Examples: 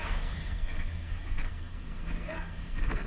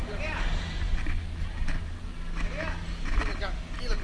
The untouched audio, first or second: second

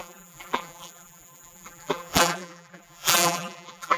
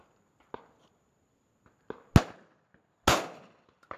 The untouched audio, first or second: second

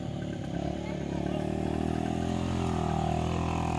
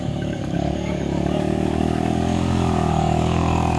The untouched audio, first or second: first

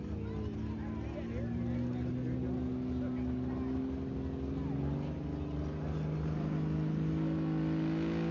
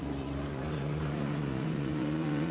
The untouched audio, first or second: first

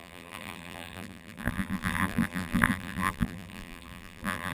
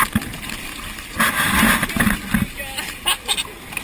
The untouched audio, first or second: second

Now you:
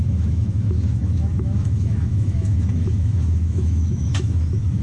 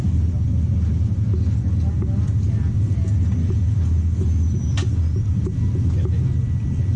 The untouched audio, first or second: second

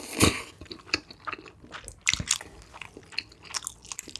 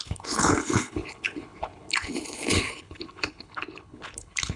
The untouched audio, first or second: first